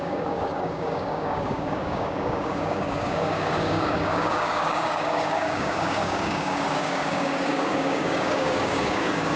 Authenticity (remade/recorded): remade